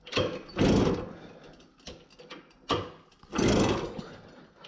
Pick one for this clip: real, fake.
real